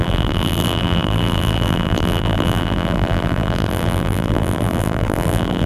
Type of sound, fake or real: fake